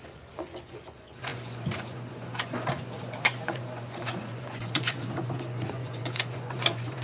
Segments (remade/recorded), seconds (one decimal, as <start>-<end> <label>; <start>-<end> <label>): 0.0-7.0 remade